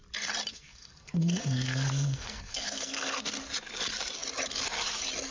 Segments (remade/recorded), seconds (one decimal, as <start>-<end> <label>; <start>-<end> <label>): 0.0-0.5 recorded; 0.5-3.3 remade; 3.3-5.3 recorded